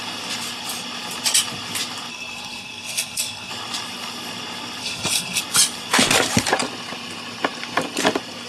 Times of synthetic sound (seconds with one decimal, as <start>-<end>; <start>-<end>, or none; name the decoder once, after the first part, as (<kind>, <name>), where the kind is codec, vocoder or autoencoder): 2.1-3.5 (codec, SNAC); 4.8-5.4